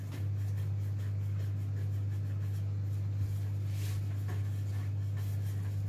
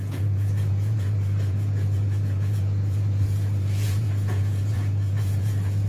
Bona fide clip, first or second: first